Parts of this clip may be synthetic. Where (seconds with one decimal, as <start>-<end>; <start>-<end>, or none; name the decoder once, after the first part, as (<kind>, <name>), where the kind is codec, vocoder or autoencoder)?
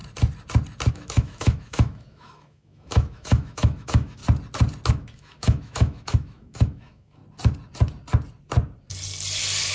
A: 0.9-4.2 (autoencoder, DAC-VAE); 4.9-7.2